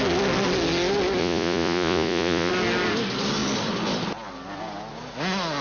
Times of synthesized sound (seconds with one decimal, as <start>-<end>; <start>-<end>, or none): 1.2-2.5